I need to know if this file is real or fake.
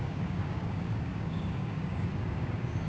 fake